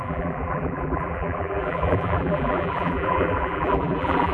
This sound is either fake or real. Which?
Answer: fake